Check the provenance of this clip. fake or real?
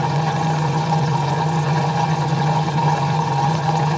fake